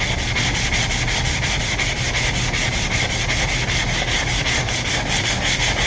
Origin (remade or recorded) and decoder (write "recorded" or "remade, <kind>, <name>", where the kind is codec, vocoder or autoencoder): recorded